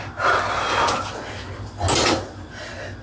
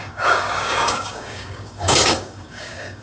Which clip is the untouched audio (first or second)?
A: first